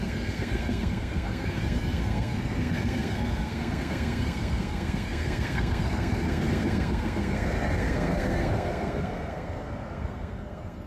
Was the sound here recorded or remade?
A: remade